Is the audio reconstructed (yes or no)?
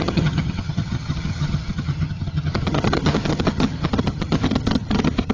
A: yes